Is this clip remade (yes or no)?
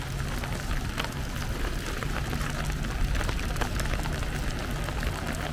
no